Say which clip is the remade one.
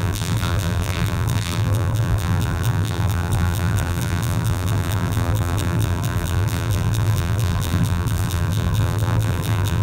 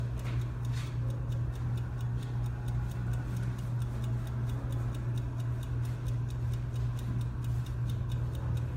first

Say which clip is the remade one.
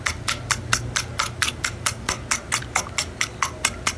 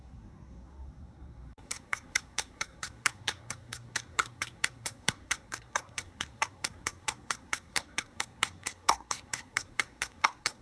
second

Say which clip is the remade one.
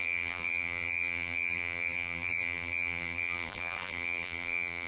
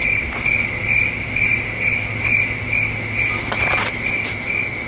first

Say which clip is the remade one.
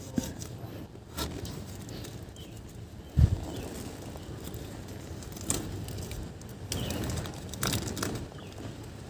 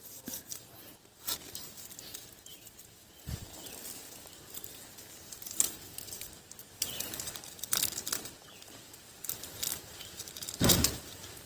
second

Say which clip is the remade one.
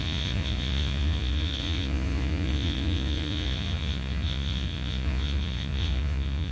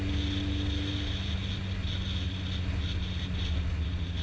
first